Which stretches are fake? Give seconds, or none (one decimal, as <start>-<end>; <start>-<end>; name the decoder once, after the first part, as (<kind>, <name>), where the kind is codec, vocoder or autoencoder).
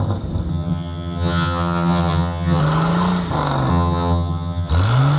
0.5-2.6 (vocoder, HiFi-GAN); 3.7-4.7